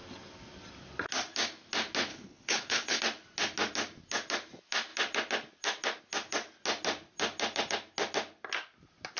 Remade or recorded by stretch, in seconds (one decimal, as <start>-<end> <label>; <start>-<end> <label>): 0.0-2.1 recorded; 2.1-3.0 remade; 3.0-9.2 recorded

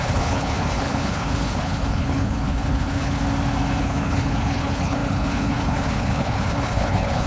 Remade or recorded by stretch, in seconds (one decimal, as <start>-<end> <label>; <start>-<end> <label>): 0.0-3.2 remade; 3.2-3.8 recorded; 3.8-7.3 remade

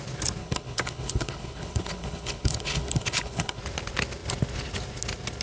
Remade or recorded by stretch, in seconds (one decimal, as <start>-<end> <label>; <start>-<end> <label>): 0.0-0.4 recorded; 0.4-3.6 remade; 3.6-5.4 recorded

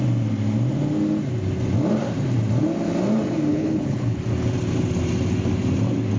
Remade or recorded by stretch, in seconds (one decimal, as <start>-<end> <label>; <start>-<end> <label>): 0.0-3.5 recorded; 3.5-4.2 remade; 4.2-6.2 recorded